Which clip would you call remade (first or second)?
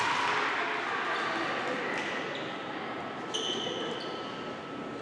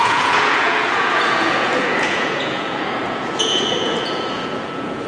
second